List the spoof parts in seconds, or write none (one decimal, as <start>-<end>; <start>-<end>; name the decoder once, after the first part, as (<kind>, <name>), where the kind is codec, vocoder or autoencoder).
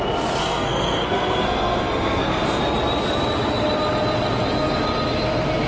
0.4-2.6 (codec, SNAC)